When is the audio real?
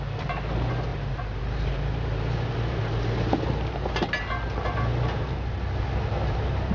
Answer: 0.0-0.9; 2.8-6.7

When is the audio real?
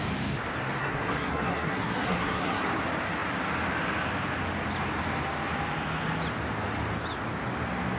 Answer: 0.0-0.8; 2.6-8.0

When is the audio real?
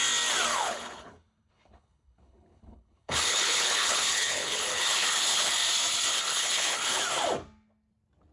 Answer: 0.0-0.5; 5.5-6.1; 7.0-8.3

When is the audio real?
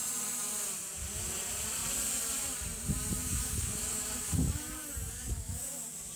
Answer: 0.0-3.2; 5.8-6.2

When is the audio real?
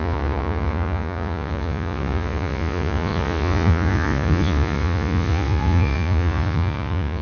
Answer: none